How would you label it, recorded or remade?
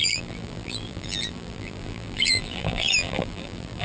remade